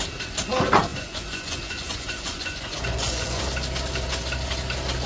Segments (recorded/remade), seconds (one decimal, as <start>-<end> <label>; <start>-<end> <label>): 0.0-0.9 recorded; 0.9-3.4 remade; 3.4-5.1 recorded